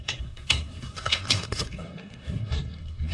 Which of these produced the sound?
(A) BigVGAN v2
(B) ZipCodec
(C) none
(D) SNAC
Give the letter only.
D